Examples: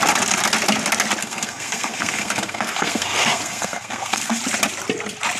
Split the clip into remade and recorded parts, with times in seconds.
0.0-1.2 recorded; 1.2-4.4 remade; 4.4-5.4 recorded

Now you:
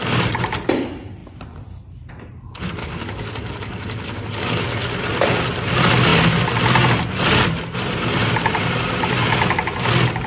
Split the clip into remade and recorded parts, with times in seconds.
0.0-2.8 recorded; 2.8-4.9 remade; 4.9-10.3 recorded

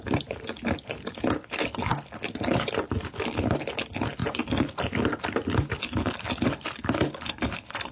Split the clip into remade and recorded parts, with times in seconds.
0.0-7.9 recorded

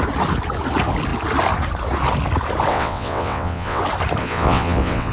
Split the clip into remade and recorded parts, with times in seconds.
0.0-2.7 recorded; 2.7-3.8 remade; 3.8-4.2 recorded; 4.2-5.1 remade

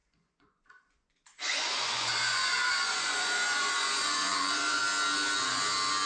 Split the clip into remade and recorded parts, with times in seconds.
0.0-4.8 remade; 4.8-6.1 recorded

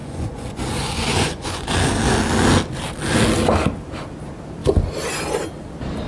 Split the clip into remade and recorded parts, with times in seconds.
0.0-1.7 remade; 1.7-6.1 recorded